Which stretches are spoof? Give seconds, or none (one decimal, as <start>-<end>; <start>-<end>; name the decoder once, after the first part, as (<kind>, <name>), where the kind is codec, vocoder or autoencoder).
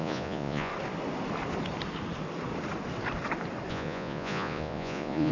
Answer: 0.0-0.7 (vocoder, Vocos); 3.7-5.3